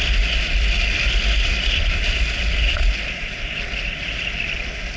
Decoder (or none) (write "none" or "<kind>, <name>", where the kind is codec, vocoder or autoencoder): none